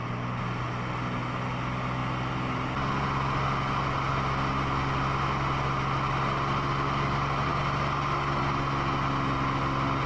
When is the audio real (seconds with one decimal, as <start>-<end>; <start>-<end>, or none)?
0.0-10.1